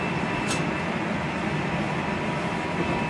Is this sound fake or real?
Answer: real